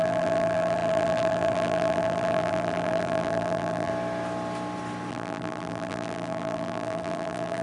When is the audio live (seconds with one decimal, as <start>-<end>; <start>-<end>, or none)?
3.9-5.1